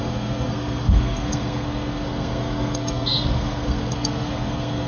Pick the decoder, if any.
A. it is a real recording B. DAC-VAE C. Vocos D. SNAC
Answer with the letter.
D